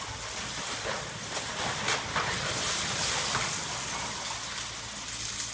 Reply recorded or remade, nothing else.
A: recorded